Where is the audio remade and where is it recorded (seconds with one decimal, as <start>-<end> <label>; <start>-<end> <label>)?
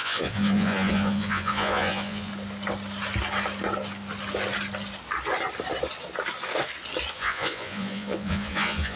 0.0-2.3 remade; 2.3-7.1 recorded; 7.1-9.0 remade